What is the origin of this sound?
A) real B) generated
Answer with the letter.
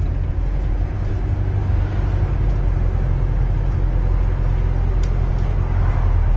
A